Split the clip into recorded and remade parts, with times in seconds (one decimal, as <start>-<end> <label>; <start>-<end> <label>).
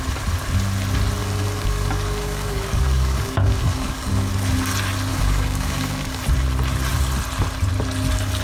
0.0-1.2 recorded; 1.2-4.3 remade; 4.3-5.1 recorded; 5.1-6.2 remade; 6.2-8.4 recorded